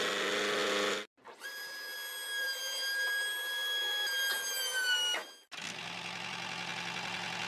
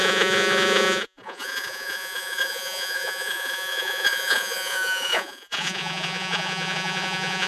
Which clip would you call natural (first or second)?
first